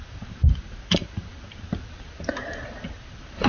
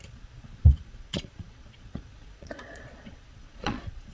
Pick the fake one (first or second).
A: second